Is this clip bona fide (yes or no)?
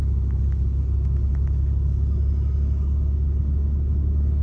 yes